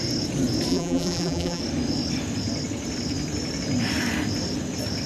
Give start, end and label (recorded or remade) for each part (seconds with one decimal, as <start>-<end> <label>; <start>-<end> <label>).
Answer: 0.0-0.7 recorded; 0.7-1.6 remade; 1.6-5.1 recorded